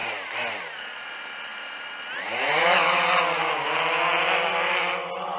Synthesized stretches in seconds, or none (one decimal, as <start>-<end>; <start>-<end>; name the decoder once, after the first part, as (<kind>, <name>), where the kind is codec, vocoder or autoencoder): none